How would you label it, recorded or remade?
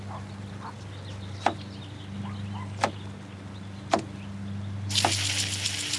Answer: recorded